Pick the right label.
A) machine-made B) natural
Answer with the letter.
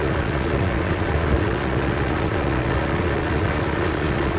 A